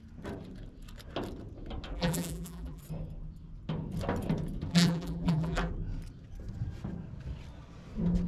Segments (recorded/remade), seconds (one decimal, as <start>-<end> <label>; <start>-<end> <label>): 0.0-1.9 recorded; 1.9-2.8 remade; 2.8-4.7 recorded; 4.7-5.7 remade; 5.7-8.3 recorded